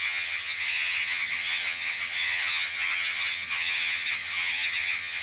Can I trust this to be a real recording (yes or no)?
no